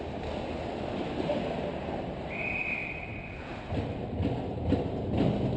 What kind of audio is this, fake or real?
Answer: real